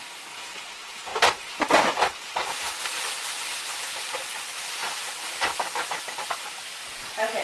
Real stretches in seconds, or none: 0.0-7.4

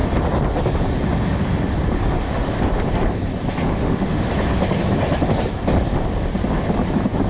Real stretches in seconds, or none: 0.0-3.7; 4.3-7.3

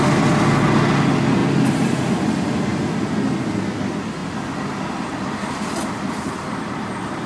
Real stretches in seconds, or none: 0.0-7.3

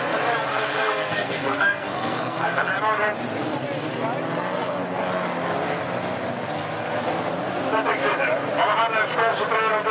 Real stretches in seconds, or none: 0.0-0.5; 2.7-9.9

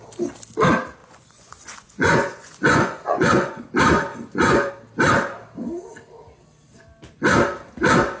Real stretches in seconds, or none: 0.0-1.0; 3.6-4.1; 4.7-8.2

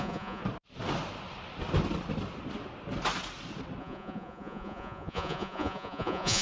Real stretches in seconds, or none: 0.4-3.8

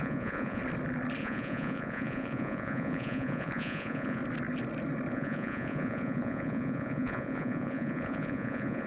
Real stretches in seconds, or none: 0.6-1.2; 4.2-5.1

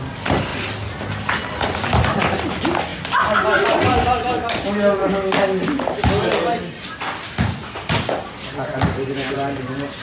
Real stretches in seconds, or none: 0.0-10.0